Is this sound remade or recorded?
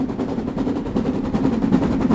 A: remade